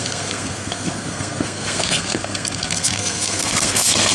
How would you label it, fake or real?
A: fake